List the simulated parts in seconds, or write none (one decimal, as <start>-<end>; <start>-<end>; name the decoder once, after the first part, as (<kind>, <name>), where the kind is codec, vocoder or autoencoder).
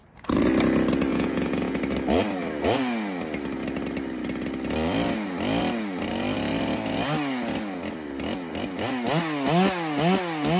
1.1-1.8 (vocoder, Vocos)